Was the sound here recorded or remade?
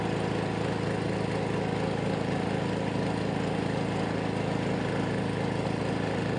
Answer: recorded